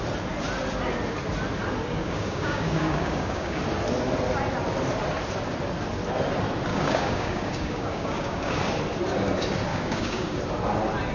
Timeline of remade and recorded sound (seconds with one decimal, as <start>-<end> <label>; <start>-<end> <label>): 0.0-2.0 recorded; 2.0-3.6 remade; 3.6-6.7 recorded; 6.7-8.7 remade; 8.7-9.7 recorded; 9.7-10.4 remade; 10.4-11.1 recorded